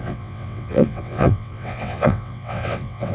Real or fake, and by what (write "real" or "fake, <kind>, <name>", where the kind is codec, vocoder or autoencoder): fake, vocoder, WaveNeXt